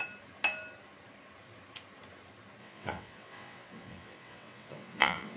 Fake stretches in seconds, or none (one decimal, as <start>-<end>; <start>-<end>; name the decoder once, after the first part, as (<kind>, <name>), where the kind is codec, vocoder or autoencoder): 2.6-5.4 (vocoder, WaveNeXt)